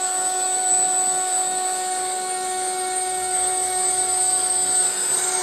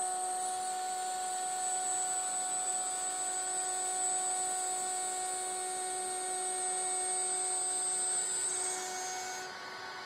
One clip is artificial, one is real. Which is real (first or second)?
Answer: second